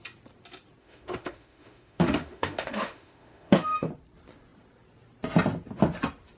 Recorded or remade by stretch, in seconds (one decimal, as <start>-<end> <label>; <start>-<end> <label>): 0.0-0.8 recorded; 0.8-3.9 remade; 3.9-6.4 recorded